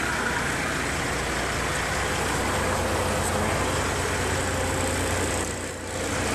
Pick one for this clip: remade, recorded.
recorded